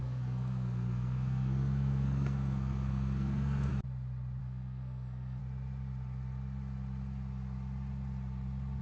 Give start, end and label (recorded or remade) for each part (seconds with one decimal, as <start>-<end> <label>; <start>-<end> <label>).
0.0-3.7 remade; 3.7-4.4 recorded; 4.4-5.4 remade; 5.4-8.8 recorded